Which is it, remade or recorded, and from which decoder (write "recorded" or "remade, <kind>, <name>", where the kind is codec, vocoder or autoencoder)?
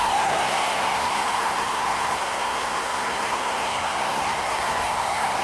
remade, codec, SNAC